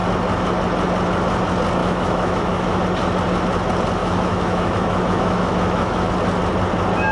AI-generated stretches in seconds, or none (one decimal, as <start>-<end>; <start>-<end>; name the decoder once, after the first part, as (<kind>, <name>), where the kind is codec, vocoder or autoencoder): 1.8-2.8 (autoencoder, DAC-VAE); 4.0-6.1